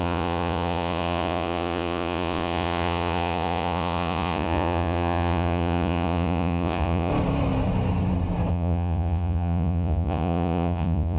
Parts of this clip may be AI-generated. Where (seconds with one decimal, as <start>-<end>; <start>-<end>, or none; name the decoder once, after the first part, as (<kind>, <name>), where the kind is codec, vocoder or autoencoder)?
0.0-7.1 (vocoder, Vocos); 8.5-11.2